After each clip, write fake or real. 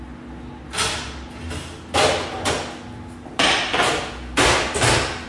real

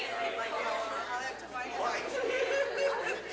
real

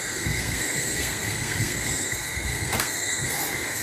fake